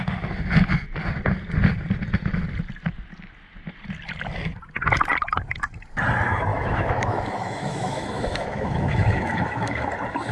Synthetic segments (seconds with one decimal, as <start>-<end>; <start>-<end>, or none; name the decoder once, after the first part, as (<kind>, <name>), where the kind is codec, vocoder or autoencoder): 6.5-9.9 (autoencoder, DAC-VAE)